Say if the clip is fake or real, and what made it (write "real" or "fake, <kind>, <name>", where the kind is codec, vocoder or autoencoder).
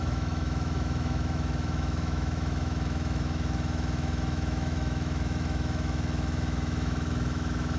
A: fake, autoencoder, DAC-VAE